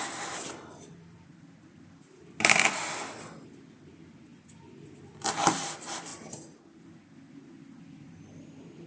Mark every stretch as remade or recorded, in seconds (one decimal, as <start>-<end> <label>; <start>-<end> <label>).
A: 0.0-8.9 recorded